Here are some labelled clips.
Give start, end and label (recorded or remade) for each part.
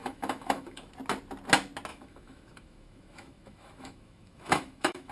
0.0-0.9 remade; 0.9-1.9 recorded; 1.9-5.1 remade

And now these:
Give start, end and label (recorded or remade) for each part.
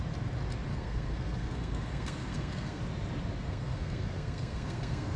0.0-0.7 recorded; 0.7-2.8 remade; 2.8-3.4 recorded; 3.4-5.2 remade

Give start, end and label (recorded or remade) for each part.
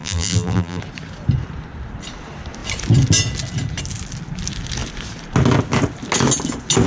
0.0-0.8 remade; 0.8-6.9 recorded